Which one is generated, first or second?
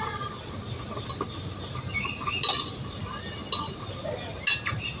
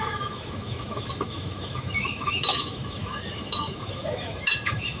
second